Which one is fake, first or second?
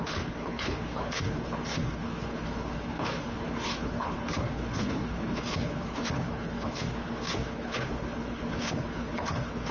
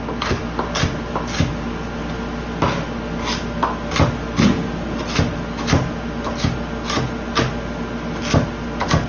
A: first